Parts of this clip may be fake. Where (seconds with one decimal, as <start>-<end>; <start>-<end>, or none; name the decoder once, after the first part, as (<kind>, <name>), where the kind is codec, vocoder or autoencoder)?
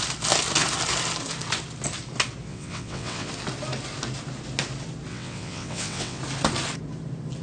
2.5-3.3 (vocoder, WaveNeXt); 5.1-6.2